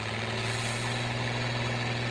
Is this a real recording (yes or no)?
yes